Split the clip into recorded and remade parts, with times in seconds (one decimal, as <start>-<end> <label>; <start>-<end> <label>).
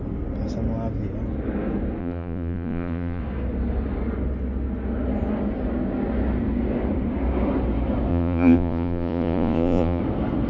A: 0.0-2.0 recorded; 2.0-3.2 remade; 3.2-8.1 recorded; 8.1-10.0 remade; 10.0-10.5 recorded